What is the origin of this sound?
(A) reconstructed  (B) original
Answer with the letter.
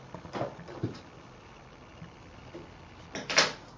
B